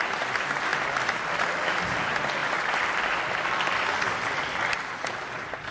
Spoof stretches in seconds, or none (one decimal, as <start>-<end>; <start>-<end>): none